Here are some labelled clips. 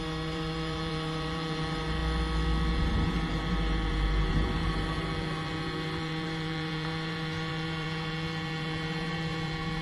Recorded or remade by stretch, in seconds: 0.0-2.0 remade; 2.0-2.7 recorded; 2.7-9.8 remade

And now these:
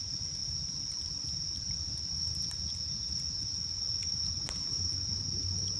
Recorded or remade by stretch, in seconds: 0.0-0.4 recorded; 0.4-1.9 remade; 1.9-5.8 recorded